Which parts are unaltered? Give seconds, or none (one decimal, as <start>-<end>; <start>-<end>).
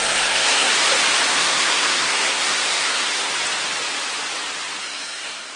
0.7-1.3; 3.3-4.8